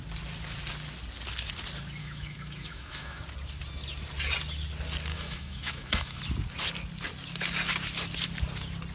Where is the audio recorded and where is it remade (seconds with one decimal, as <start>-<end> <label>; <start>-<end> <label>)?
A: 0.0-2.0 recorded; 2.0-3.2 remade; 3.2-5.1 recorded; 5.1-6.2 remade; 6.2-8.9 recorded